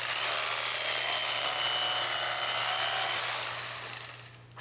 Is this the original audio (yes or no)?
yes